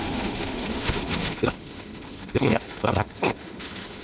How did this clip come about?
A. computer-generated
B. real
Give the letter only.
A